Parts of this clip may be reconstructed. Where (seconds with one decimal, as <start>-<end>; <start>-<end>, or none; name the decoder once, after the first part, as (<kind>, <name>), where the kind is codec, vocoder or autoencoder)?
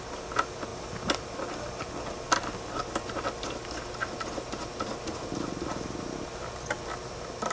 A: none